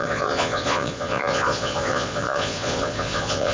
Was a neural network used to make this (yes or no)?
yes